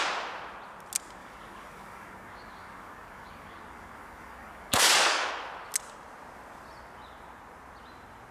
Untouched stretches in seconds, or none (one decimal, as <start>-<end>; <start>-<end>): 0.0-1.2; 5.3-8.3

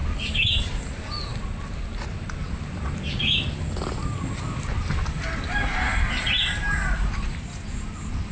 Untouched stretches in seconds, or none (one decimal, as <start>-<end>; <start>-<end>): 0.0-8.3